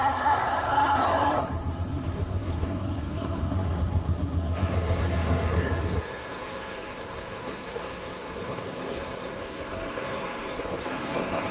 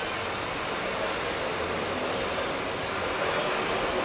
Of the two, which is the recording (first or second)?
second